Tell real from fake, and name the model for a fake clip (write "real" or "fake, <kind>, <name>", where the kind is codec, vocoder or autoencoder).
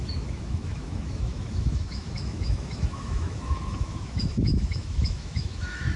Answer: fake, autoencoder, DAC-VAE